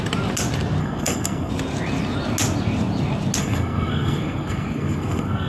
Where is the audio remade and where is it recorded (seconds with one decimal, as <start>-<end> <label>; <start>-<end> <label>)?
0.0-0.8 recorded; 0.8-1.5 remade; 1.5-3.4 recorded; 3.4-5.5 remade